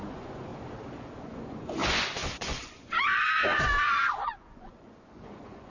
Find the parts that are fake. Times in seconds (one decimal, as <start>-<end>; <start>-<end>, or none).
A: 0.0-0.5; 1.2-5.7